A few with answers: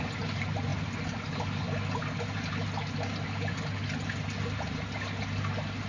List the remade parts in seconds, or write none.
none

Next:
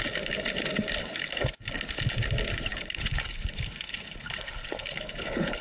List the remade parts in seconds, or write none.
1.0-1.6 (codec, HILCodec); 2.7-5.6

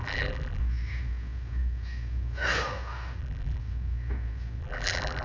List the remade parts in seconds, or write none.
0.0-0.6 (vocoder, BigVGAN v2); 3.2-3.6; 4.6-5.2

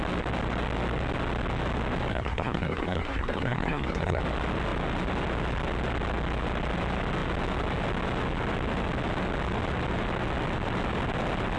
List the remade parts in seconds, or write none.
2.1-4.2 (codec, SNAC)

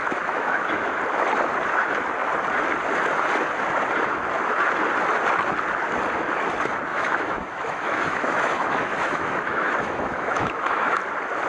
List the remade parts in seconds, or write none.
0.0-1.0 (autoencoder, DAC-VAE); 6.9-11.0

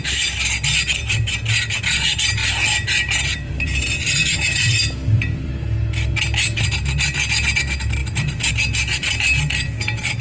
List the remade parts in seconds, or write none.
1.0-1.8 (vocoder, BigVGAN v2); 2.4-5.5; 8.0-8.5